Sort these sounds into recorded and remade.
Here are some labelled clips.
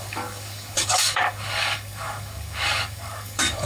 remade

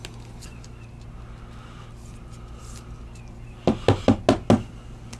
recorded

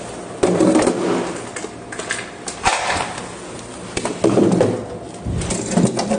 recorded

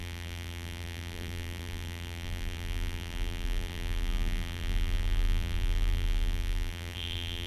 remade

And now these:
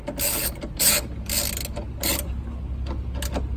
recorded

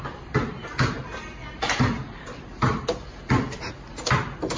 recorded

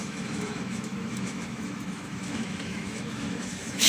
remade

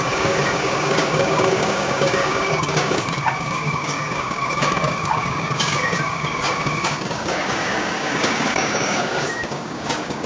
remade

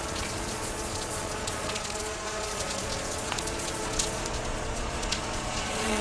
remade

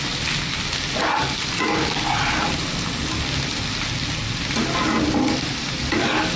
recorded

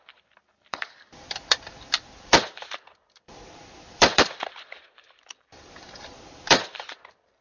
remade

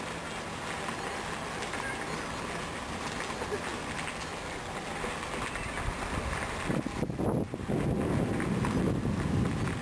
recorded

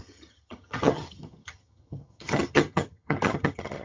remade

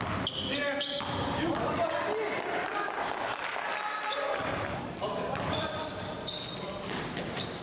recorded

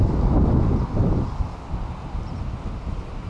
recorded